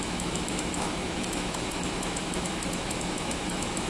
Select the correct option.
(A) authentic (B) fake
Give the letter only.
B